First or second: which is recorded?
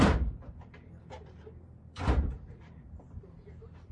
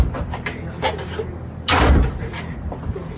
second